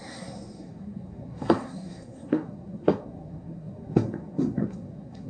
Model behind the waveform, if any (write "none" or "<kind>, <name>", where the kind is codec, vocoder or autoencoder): codec, SNAC